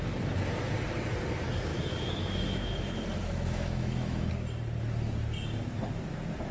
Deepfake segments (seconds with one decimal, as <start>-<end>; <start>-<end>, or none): 1.7-4.3